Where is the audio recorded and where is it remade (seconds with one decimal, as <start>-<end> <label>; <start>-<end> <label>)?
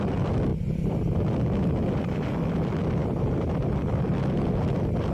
0.0-5.1 recorded